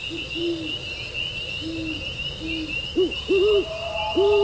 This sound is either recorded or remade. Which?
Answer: recorded